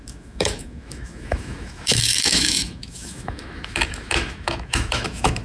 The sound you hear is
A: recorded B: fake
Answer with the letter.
B